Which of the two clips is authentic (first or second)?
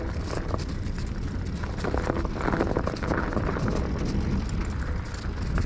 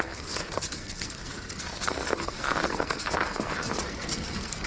first